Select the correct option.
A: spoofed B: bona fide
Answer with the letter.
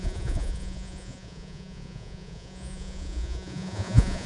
A